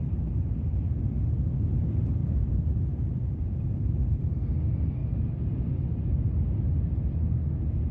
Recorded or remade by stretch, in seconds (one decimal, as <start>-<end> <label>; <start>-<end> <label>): 0.0-2.2 recorded; 2.2-4.3 remade; 4.3-7.9 recorded